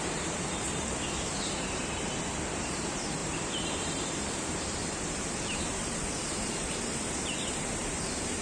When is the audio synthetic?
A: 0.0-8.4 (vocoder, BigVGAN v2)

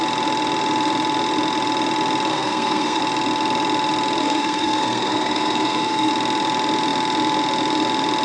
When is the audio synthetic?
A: 2.3-3.0 (codec, SNAC); 4.2-6.1